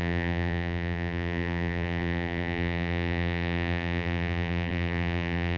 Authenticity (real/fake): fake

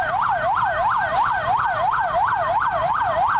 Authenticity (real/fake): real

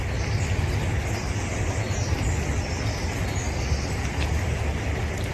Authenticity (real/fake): real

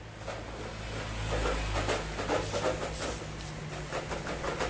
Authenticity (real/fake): real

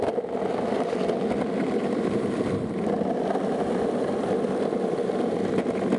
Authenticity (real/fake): fake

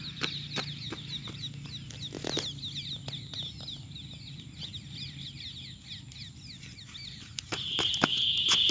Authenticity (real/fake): real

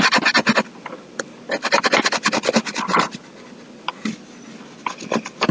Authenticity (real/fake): real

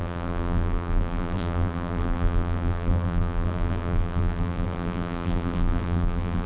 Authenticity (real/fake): fake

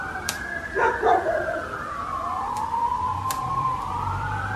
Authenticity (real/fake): fake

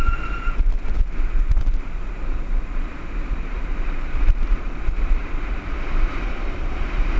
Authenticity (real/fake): fake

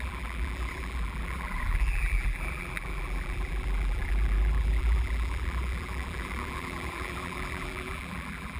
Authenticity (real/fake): fake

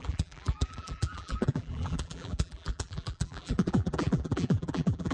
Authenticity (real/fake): fake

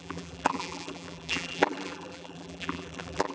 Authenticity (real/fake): fake